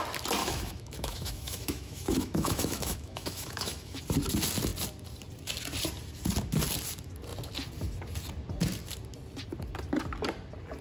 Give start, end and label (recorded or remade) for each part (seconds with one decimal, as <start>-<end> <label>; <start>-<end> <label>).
0.0-0.4 recorded; 0.4-4.0 remade; 4.0-10.8 recorded